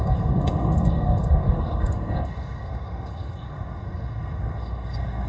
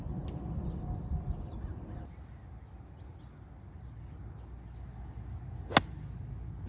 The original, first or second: second